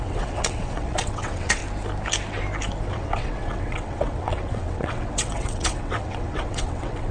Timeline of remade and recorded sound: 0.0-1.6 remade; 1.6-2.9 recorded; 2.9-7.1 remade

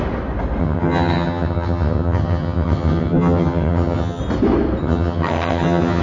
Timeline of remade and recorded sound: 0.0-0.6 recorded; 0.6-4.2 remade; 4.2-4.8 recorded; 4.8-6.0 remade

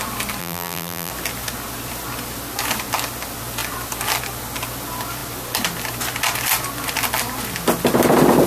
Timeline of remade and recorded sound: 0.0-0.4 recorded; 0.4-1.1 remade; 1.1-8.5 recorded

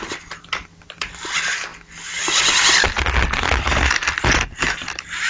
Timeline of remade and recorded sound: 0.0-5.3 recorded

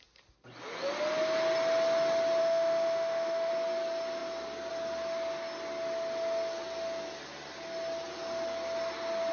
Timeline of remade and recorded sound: 0.0-2.4 recorded; 2.4-3.5 remade; 3.5-9.3 recorded